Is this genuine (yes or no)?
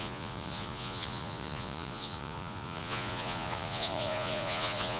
no